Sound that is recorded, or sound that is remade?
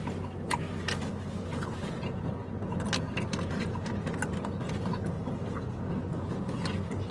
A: recorded